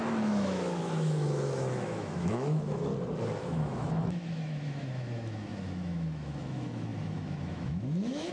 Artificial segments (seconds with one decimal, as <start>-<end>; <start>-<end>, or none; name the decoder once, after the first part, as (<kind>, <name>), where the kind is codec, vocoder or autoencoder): 0.0-2.9 (autoencoder, DAC-VAE); 3.4-8.3

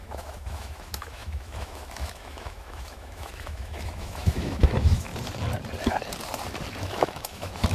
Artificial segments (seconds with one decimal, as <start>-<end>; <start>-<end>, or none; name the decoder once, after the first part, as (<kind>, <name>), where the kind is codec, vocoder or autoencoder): 0.0-5.1 (autoencoder, DAC-VAE); 6.8-7.7

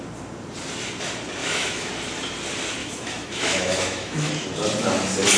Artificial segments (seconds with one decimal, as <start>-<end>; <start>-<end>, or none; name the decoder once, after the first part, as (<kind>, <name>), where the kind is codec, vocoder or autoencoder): 1.4-1.9 (autoencoder, DAC-VAE); 2.8-4.3

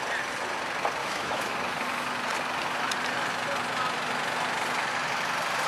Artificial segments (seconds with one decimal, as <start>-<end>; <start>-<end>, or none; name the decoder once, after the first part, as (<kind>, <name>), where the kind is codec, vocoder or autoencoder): 1.0-1.5 (autoencoder, DAC-VAE)

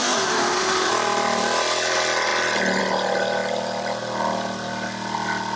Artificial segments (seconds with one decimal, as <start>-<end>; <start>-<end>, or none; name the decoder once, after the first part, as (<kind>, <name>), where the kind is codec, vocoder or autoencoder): 0.0-0.9 (autoencoder, DAC-VAE)

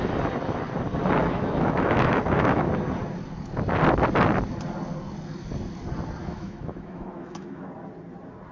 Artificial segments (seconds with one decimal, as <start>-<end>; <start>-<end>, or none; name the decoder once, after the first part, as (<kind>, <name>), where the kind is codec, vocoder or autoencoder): 1.2-2.7 (autoencoder, DAC-VAE); 6.2-7.6